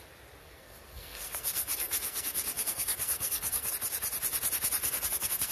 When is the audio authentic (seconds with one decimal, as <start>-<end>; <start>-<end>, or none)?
0.0-0.4; 3.7-4.8